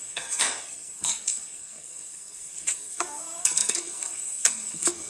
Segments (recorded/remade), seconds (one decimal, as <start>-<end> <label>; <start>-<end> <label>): 0.0-5.1 remade